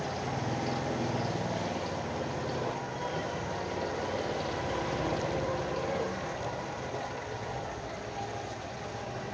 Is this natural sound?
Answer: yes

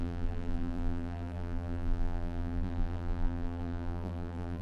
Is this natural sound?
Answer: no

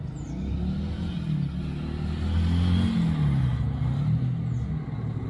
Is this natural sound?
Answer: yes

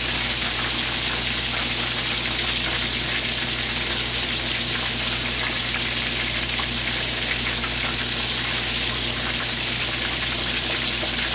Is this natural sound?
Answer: yes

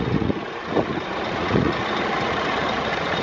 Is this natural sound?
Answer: no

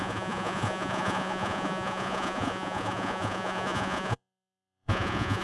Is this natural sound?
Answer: no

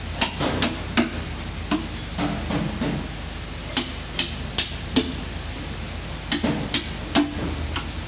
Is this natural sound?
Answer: yes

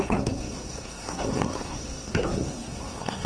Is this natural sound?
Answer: no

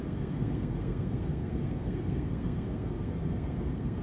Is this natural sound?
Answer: no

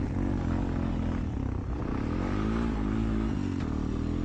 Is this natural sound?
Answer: yes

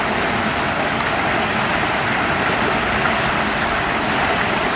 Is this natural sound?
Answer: yes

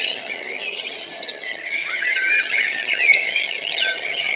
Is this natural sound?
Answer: no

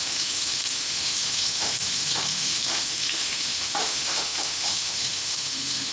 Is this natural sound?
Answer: no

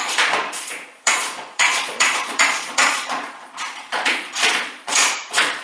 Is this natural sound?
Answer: no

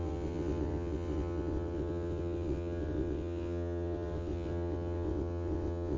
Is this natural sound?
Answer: no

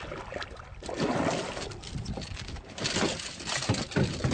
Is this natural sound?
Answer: yes